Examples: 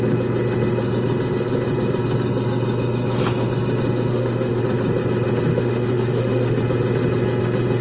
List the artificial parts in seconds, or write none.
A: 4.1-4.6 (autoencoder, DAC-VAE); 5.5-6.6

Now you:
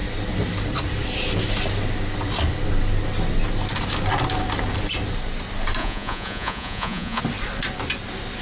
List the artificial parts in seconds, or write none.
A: 5.8-7.2 (vocoder, Vocos)

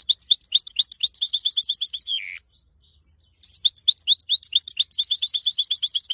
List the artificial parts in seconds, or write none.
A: 0.0-3.8 (vocoder, BigVGAN v2); 5.2-6.1

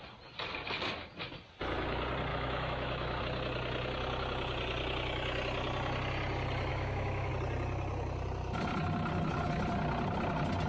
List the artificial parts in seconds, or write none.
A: 2.3-3.2 (autoencoder, DAC-VAE); 6.7-7.3